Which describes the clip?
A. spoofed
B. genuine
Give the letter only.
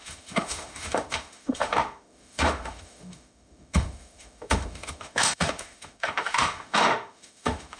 A